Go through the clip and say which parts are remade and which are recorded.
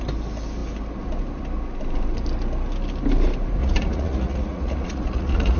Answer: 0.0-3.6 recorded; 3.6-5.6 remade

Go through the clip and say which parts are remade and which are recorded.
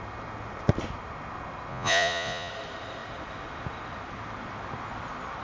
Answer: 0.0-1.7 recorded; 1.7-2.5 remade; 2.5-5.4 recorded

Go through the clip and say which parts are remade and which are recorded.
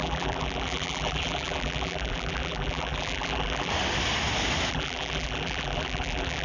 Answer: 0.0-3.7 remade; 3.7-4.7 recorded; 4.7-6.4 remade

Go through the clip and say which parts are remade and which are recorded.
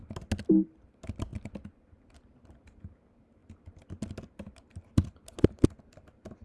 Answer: 0.0-6.4 recorded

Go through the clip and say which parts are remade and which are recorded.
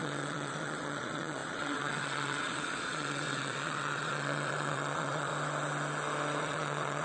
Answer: 0.0-5.3 remade; 5.3-6.4 recorded; 6.4-7.0 remade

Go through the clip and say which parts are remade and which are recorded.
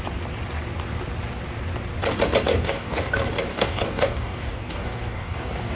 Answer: 0.0-2.5 recorded; 2.5-3.1 remade; 3.1-3.5 recorded; 3.5-5.8 remade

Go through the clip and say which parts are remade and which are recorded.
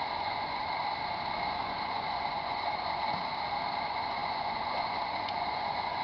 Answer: 0.0-0.6 remade; 0.6-1.6 recorded; 1.6-3.2 remade; 3.2-3.8 recorded; 3.8-6.0 remade